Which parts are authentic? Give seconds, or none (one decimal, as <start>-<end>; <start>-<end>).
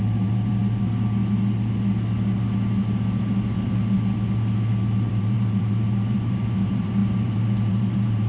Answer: 0.6-5.1